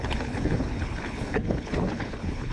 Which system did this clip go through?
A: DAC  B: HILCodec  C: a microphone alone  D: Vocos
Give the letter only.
B